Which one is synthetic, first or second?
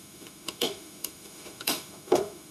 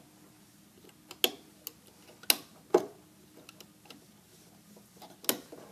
first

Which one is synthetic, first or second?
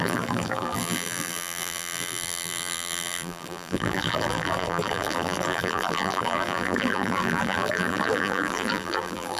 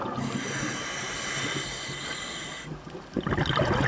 first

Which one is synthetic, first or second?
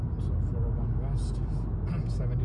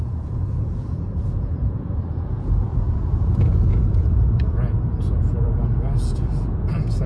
second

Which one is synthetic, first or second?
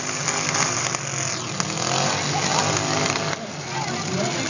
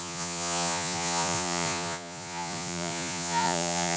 second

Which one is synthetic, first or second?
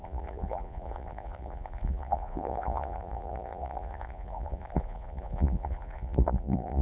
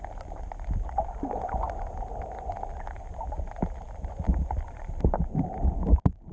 first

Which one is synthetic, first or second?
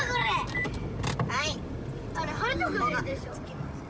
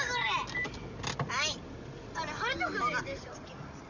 first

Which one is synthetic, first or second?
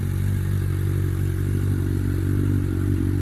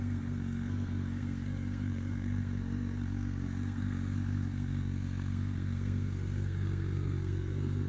second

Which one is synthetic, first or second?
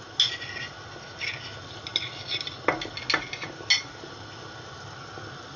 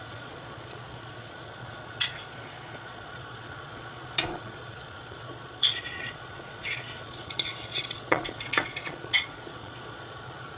second